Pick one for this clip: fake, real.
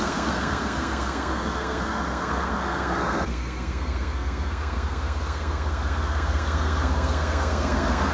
fake